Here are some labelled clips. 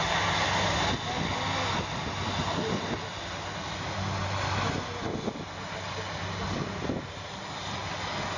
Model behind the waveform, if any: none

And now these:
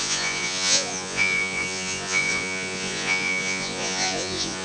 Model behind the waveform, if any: vocoder, Vocos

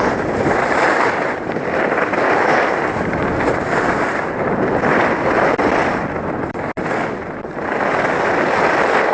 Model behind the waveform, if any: none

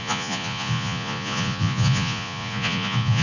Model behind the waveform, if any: vocoder, Vocos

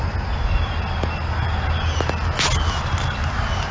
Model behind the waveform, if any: none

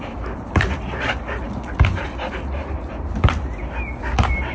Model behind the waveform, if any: none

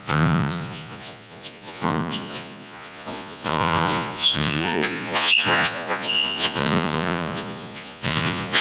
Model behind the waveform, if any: vocoder, Vocos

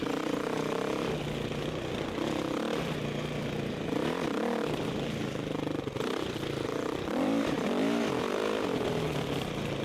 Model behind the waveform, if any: none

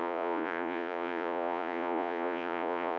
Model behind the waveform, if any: vocoder, Vocos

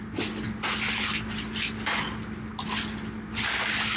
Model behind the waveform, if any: none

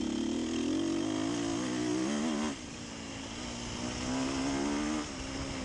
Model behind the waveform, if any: none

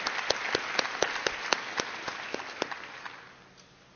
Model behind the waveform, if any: none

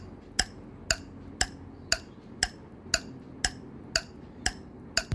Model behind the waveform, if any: none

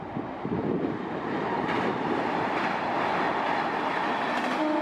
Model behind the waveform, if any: none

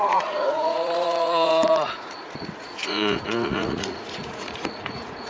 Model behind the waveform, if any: vocoder, Vocos